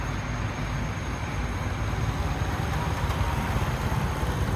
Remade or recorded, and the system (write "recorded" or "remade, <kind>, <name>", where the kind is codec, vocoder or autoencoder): recorded